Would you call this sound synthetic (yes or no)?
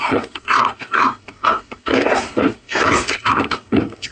yes